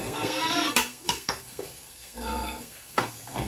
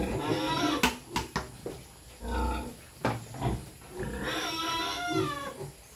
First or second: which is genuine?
second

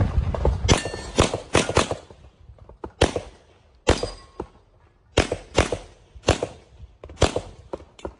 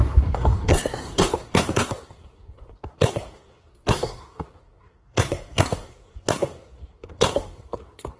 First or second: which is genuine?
first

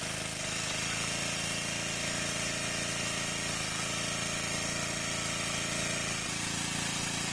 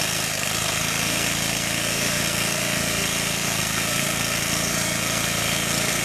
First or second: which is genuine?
first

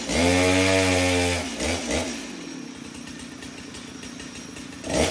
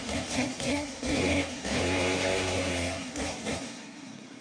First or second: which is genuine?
first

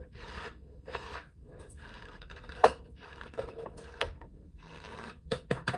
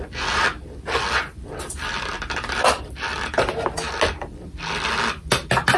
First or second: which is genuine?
second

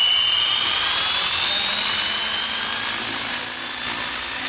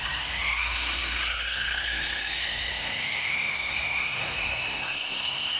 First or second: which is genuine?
first